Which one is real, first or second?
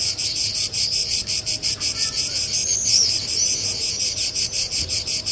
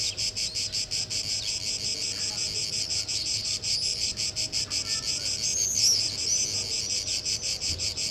second